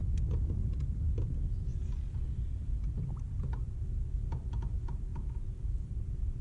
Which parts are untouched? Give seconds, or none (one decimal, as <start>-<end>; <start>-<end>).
0.0-5.1; 5.7-6.4